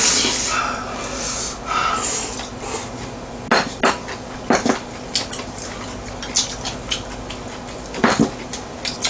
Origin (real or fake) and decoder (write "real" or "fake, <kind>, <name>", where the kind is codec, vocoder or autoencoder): real